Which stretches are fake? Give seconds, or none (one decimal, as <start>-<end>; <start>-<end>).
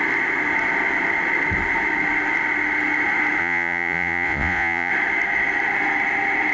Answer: 3.4-4.9